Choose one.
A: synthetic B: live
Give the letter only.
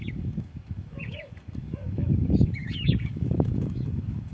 A